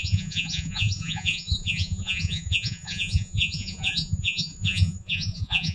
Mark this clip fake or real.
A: fake